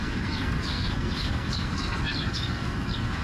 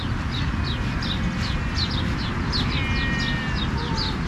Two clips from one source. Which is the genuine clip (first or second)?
second